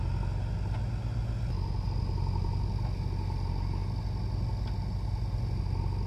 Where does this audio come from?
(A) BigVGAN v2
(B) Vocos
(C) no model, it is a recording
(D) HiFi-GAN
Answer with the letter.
C